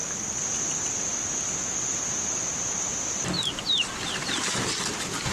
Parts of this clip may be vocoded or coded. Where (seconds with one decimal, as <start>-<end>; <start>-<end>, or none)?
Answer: none